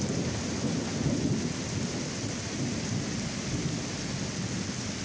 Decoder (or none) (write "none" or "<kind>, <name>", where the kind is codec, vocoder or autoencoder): none